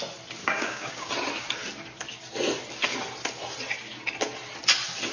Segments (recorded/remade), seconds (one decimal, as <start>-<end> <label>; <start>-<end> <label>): 0.0-0.4 recorded; 0.4-1.1 remade; 1.1-5.1 recorded